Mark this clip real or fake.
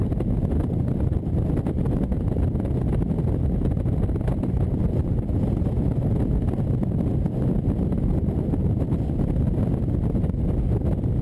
real